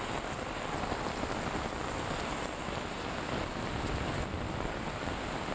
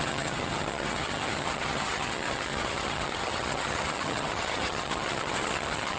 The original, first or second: first